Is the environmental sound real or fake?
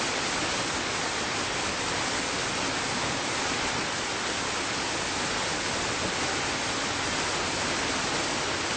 real